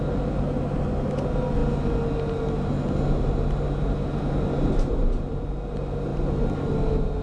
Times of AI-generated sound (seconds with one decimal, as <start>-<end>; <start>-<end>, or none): none